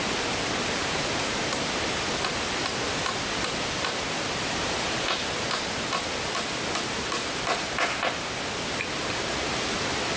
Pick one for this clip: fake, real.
real